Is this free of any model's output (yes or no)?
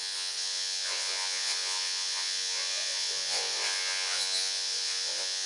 no